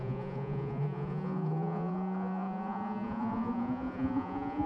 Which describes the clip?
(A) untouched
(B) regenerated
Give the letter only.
B